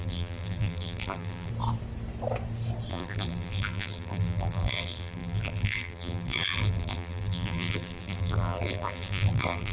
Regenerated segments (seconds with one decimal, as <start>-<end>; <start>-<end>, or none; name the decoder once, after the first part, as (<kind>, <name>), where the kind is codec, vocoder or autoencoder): 0.0-1.5 (vocoder, BigVGAN v2); 2.9-9.7

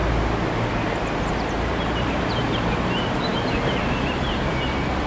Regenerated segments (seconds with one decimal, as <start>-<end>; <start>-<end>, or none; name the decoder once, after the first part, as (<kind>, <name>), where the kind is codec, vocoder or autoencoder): 0.0-5.1 (vocoder, BigVGAN v2)

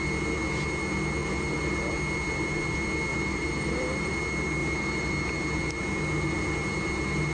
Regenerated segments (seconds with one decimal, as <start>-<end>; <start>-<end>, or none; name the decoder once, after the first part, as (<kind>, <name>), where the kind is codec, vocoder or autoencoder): 1.2-1.8 (vocoder, BigVGAN v2); 3.1-4.1; 4.6-5.1

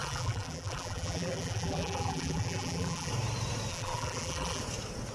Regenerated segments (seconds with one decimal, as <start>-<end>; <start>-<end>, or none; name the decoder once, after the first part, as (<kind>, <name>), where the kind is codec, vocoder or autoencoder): 0.0-3.1 (vocoder, BigVGAN v2); 3.7-4.6